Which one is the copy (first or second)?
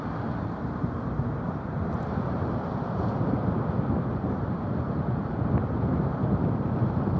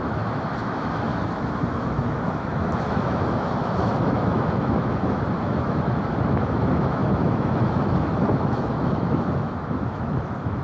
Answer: second